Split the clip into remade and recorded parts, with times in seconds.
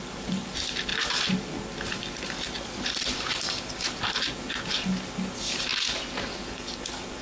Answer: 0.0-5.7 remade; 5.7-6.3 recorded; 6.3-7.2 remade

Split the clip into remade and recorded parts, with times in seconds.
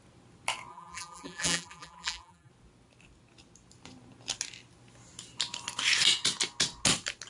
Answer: 0.0-0.7 recorded; 0.7-2.5 remade; 2.5-7.3 recorded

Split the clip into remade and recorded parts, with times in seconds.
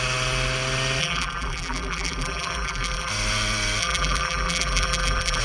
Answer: 0.0-1.0 recorded; 1.0-3.1 remade; 3.1-3.8 recorded; 3.8-5.4 remade